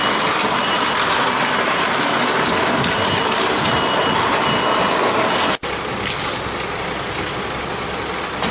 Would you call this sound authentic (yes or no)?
yes